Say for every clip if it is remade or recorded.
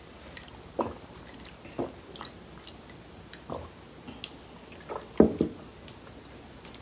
recorded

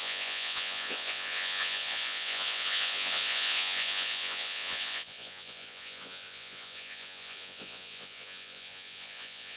remade